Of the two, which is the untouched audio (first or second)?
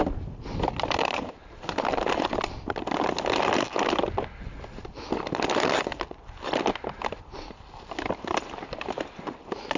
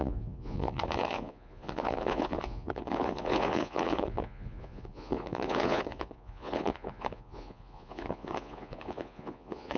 first